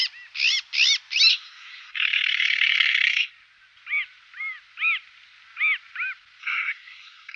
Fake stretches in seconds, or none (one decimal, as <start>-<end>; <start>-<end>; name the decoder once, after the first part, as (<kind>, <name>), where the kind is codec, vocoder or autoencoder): 1.3-3.3 (codec, SNAC); 6.4-7.4

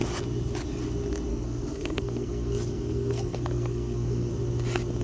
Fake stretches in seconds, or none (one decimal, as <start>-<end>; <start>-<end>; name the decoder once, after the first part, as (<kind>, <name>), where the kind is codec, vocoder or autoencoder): 1.3-4.3 (codec, SNAC)

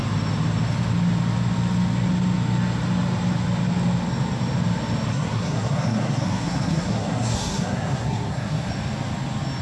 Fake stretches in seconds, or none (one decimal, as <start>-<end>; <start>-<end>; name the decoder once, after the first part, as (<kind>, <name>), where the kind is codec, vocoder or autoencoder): 5.1-8.7 (codec, SNAC)

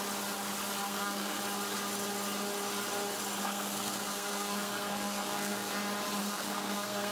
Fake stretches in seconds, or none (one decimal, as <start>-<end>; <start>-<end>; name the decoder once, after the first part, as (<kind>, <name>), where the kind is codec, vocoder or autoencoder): 0.8-1.4 (codec, SNAC); 3.4-5.8; 6.2-7.1

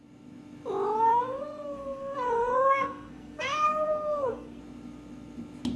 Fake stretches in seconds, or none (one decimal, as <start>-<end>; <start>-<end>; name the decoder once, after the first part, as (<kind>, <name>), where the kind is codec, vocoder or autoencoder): 1.1-4.6 (codec, SNAC)